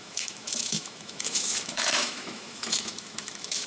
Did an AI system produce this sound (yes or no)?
yes